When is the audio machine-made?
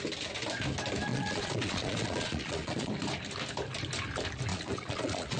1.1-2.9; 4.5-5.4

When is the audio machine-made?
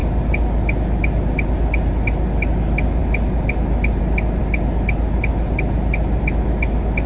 none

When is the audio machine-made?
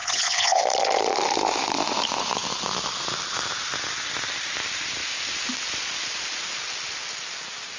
0.0-0.6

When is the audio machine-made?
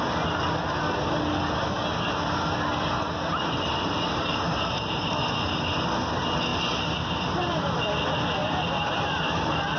3.3-5.7; 6.5-7.8; 8.4-9.8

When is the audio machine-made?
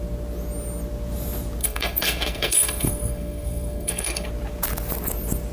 1.6-4.3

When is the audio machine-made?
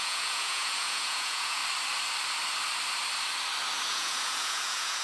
0.0-1.6; 3.9-5.0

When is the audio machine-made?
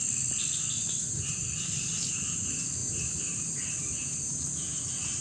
2.8-3.8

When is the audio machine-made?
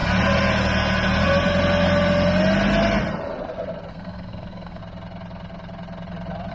3.9-4.8